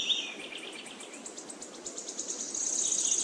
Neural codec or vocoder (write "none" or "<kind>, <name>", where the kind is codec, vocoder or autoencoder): none